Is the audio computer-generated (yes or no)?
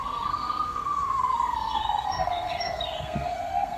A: yes